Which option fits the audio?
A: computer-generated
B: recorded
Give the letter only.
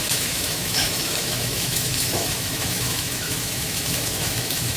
A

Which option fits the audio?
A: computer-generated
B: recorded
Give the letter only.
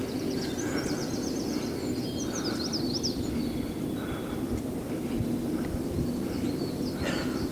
B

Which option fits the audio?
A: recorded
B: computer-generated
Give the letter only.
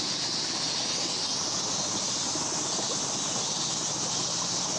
A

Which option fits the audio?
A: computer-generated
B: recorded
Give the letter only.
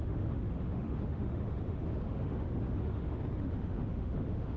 A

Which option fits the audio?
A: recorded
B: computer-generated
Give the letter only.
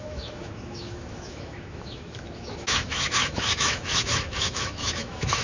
B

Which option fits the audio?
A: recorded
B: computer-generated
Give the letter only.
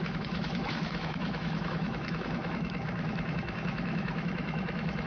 B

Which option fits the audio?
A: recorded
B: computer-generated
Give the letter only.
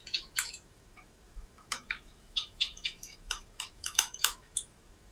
B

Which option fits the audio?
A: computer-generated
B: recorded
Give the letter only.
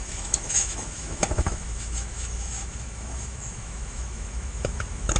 A